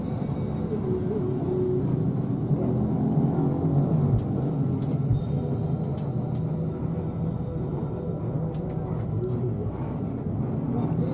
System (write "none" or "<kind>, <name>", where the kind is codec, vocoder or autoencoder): none